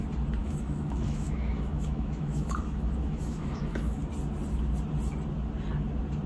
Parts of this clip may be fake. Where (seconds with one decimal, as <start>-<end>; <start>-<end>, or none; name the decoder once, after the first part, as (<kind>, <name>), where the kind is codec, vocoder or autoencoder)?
0.4-4.0 (autoencoder, DAC-VAE)